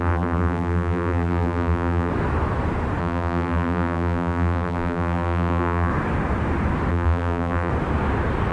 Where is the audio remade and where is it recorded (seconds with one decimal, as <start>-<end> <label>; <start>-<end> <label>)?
0.0-2.1 remade; 2.1-3.0 recorded; 3.0-5.9 remade; 5.9-6.9 recorded; 6.9-7.7 remade; 7.7-8.5 recorded